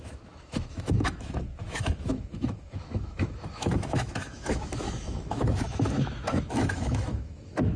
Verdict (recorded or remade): remade